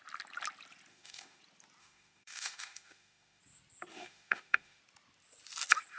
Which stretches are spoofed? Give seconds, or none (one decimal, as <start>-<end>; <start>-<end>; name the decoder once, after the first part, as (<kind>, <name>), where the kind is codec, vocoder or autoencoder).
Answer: 0.9-1.4 (autoencoder, DAC-VAE); 1.8-3.4; 3.9-4.8